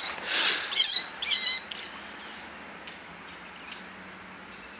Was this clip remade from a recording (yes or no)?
no